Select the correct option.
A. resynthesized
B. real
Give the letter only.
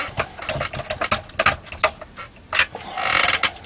B